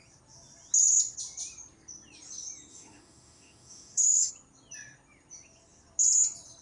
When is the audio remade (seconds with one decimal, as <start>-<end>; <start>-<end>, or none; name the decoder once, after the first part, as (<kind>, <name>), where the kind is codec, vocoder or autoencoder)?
2.7-4.3 (autoencoder, DAC-VAE)